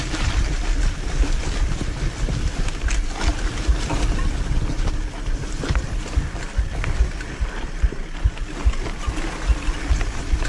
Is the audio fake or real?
real